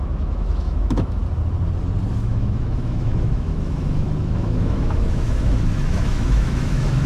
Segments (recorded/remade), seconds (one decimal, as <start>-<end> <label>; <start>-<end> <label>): 0.0-1.2 remade; 1.2-2.1 recorded; 2.1-7.1 remade

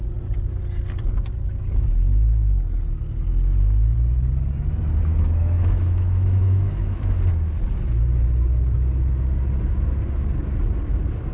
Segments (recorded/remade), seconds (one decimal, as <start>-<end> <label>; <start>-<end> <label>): 0.0-5.1 recorded; 5.1-7.1 remade; 7.1-11.3 recorded

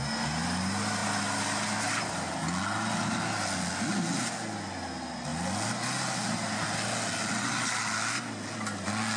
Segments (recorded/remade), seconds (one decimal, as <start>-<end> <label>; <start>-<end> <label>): 0.0-9.2 recorded

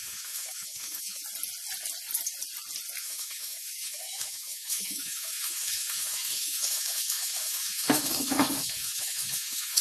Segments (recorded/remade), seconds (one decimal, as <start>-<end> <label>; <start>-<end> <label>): 0.0-1.2 remade; 1.2-3.0 recorded; 3.0-9.8 remade

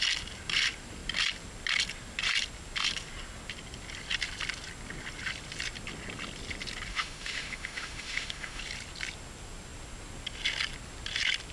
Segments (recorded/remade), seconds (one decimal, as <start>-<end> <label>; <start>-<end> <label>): 0.0-6.9 recorded; 6.9-8.6 remade; 8.6-11.5 recorded

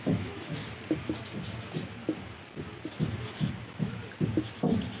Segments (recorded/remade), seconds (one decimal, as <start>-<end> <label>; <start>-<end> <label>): 0.0-0.6 remade; 0.6-3.6 recorded; 3.6-4.0 remade; 4.0-5.0 recorded